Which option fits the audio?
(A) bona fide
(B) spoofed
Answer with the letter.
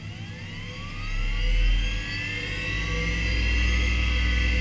A